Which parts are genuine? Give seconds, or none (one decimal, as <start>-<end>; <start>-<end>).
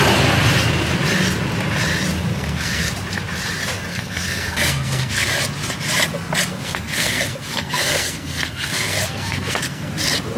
0.0-2.3; 2.9-3.9; 5.3-6.5; 9.9-10.4